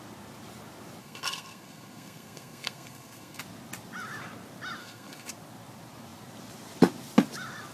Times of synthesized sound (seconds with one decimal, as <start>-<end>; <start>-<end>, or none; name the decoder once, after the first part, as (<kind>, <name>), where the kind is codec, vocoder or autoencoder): 1.0-3.4 (codec, SNAC); 4.8-5.3